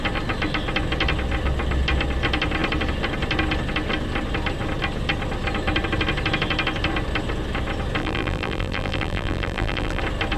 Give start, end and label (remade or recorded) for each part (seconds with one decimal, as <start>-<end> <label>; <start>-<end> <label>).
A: 0.0-8.0 recorded; 8.0-10.0 remade; 10.0-10.4 recorded